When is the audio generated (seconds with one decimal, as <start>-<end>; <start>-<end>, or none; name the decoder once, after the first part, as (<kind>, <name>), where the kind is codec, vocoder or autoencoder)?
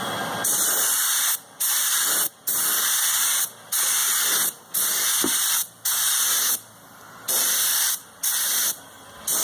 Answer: none